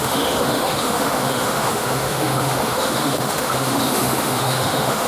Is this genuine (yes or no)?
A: no